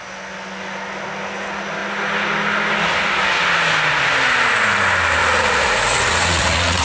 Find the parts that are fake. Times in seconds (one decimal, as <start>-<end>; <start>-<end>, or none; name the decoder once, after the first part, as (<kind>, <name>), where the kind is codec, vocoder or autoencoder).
5.2-6.8 (vocoder, Vocos)